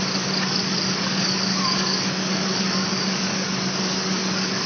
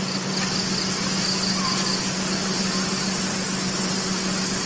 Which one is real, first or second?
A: second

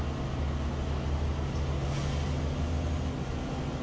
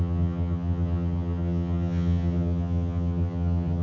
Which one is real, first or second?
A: first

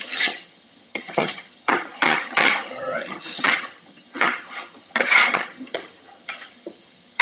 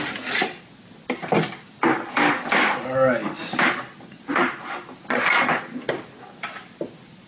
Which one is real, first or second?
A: second